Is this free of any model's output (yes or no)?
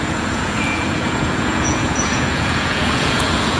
no